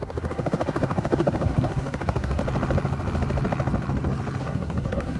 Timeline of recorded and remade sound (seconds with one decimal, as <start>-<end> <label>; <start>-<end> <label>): 0.0-2.4 remade; 2.4-4.4 recorded; 4.4-5.2 remade